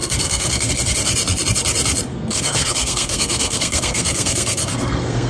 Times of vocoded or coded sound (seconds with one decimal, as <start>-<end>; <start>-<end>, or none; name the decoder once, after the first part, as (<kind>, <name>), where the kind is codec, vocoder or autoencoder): 0.0-0.7 (codec, SNAC); 2.1-5.3